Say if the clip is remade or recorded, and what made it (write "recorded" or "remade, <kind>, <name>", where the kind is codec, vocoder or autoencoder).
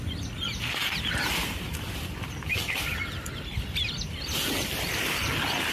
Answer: recorded